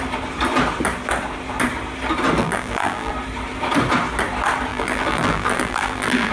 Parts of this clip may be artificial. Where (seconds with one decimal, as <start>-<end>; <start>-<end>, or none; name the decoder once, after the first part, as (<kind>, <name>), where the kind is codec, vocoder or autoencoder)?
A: 2.4-3.1 (vocoder, BigVGAN v2); 4.7-6.3